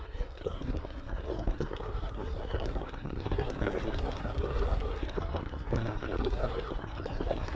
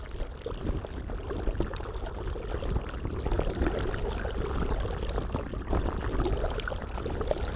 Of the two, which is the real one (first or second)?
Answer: second